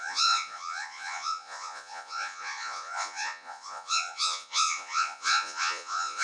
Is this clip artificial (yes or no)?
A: yes